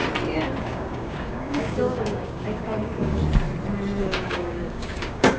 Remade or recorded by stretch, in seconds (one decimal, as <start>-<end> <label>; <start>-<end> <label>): 0.0-0.6 recorded; 0.6-3.2 remade; 3.2-4.0 recorded; 4.0-5.4 remade